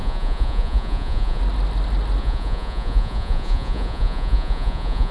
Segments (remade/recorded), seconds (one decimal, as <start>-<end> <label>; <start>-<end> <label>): 0.0-1.4 remade; 1.4-2.2 recorded; 2.2-5.1 remade

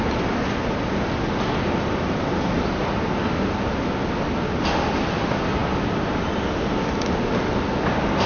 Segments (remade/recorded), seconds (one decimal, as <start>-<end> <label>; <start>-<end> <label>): 0.0-8.3 recorded

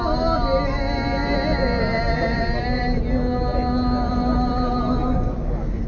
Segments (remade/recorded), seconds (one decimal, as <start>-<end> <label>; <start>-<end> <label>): 0.0-5.9 recorded

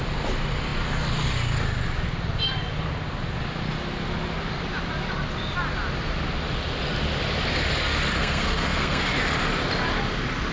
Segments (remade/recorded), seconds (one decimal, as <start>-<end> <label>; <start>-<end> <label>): 0.0-8.2 recorded; 8.2-9.0 remade; 9.0-10.5 recorded